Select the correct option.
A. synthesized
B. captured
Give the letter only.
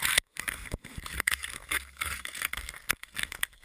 A